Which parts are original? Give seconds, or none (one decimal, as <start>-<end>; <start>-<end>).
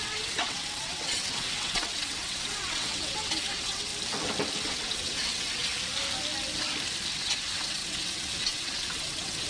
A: 3.9-4.6; 5.7-7.1